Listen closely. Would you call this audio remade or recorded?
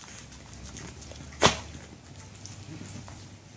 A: recorded